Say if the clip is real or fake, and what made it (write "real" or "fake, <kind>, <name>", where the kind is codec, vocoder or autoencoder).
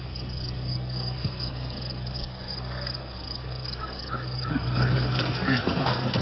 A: fake, codec, SNAC